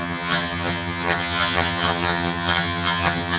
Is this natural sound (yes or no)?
no